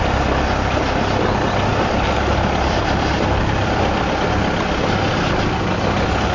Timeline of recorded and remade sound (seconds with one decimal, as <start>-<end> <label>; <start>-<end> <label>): 0.0-1.7 recorded; 1.7-4.3 remade; 4.3-6.3 recorded